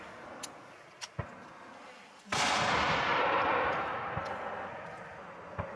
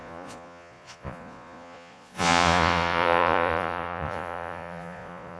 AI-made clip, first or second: second